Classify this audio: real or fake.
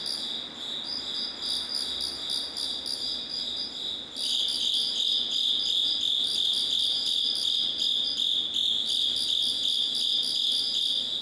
real